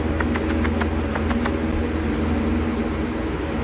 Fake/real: real